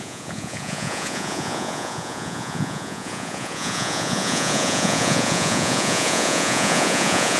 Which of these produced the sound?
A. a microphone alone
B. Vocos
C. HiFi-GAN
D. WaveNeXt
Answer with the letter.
B